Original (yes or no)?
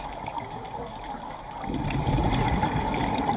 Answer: yes